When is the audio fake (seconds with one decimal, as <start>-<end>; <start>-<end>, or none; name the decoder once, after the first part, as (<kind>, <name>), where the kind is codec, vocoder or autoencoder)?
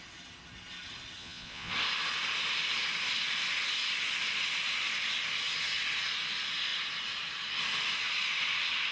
1.2-1.7 (vocoder, Vocos)